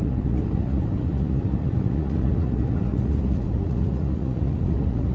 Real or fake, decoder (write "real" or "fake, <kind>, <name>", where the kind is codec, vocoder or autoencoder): fake, vocoder, Vocos